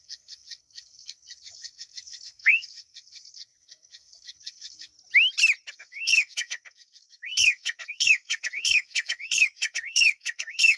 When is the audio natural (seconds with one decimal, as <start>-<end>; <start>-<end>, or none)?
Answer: 4.9-5.7